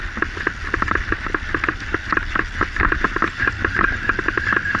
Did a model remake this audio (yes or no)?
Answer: no